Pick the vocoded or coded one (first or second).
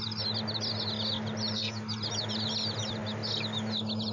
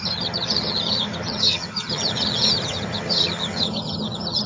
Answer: second